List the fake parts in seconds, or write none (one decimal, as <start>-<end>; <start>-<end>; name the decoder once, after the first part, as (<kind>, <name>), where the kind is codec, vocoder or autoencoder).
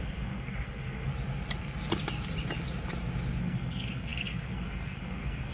0.0-1.1 (codec, SNAC); 3.4-5.5